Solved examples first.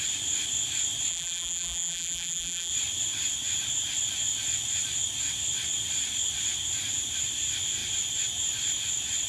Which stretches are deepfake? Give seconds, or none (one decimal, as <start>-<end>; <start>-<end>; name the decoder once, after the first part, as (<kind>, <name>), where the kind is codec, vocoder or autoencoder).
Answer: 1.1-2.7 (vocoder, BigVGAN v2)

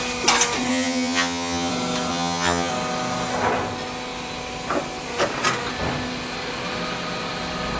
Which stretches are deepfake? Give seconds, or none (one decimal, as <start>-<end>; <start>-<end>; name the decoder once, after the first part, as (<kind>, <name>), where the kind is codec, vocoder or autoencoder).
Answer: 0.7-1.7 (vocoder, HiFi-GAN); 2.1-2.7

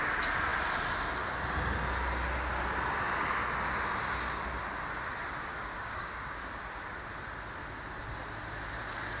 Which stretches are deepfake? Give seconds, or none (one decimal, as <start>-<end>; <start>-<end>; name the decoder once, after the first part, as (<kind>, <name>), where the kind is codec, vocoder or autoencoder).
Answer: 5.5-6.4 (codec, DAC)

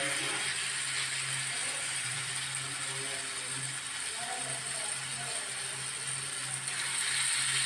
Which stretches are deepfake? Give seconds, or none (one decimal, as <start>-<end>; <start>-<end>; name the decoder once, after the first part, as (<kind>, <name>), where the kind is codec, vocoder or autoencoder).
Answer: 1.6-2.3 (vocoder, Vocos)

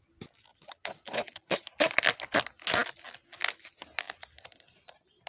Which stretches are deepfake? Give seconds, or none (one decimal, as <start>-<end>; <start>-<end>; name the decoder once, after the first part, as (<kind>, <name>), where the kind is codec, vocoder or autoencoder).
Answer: 0.5-1.6 (vocoder, Vocos)

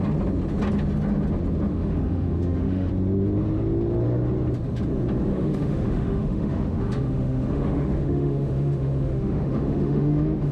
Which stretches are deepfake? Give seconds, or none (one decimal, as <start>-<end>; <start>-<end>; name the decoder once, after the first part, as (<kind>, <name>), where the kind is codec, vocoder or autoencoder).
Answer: 1.7-2.9 (autoencoder, DAC-VAE); 5.3-10.5